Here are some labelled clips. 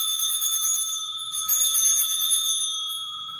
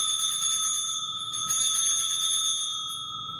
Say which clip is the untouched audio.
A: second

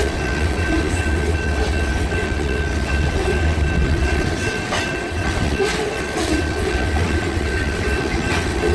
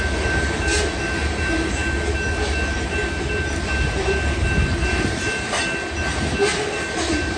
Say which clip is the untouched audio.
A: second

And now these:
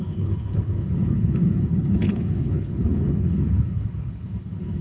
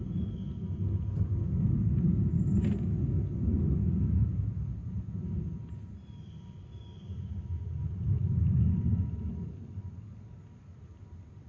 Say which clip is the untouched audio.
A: second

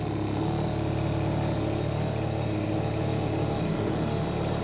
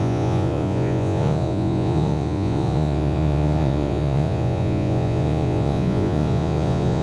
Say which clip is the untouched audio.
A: first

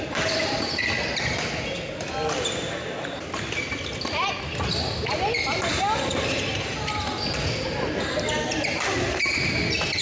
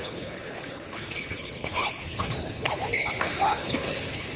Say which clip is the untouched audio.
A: first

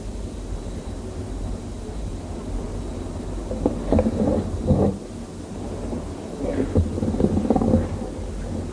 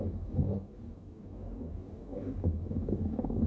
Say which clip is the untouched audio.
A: first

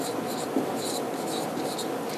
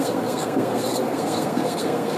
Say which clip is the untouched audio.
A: first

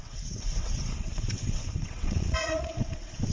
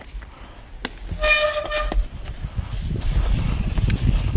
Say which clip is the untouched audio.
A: second